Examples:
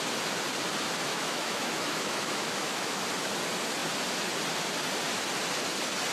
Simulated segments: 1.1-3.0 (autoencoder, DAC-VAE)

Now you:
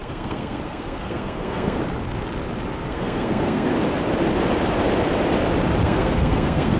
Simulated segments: 0.0-1.8 (codec, SNAC); 2.9-3.7; 5.8-6.8

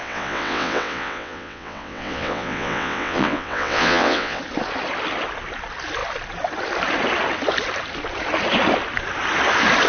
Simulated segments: 0.0-4.4 (vocoder, WaveNeXt)

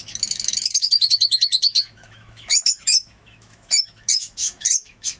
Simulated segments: 0.0-5.2 (autoencoder, DAC-VAE)

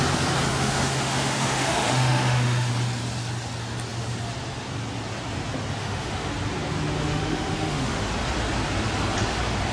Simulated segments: 0.5-2.7 (autoencoder, DAC-VAE); 5.8-6.3; 7.0-8.1

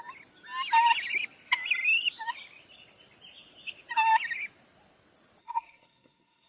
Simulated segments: 5.4-6.5 (codec, SNAC)

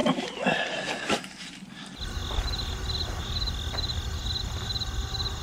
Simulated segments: none